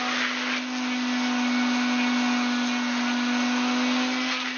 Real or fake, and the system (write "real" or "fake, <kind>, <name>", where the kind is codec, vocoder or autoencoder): real